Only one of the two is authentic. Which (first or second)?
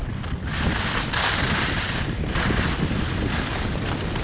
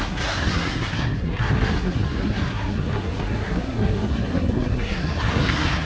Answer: first